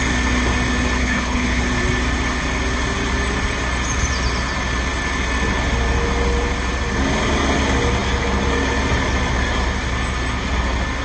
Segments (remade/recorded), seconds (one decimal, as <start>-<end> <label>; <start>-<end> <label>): 0.0-1.0 recorded; 1.0-1.6 remade; 1.6-11.0 recorded